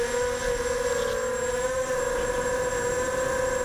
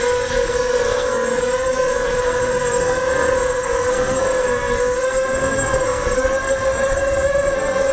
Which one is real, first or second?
first